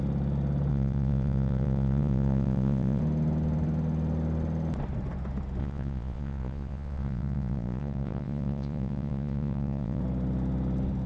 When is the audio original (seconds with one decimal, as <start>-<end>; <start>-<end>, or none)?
0.0-0.7; 3.0-5.6; 10.0-11.1